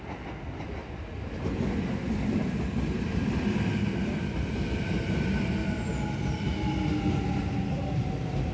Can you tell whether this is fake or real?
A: real